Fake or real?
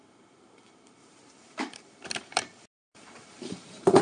fake